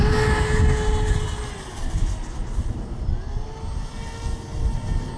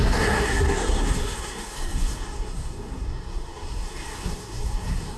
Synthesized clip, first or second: second